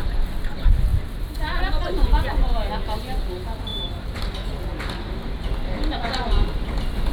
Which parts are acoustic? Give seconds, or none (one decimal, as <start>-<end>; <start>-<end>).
0.0-0.9; 1.6-3.7; 4.2-4.7; 5.6-7.1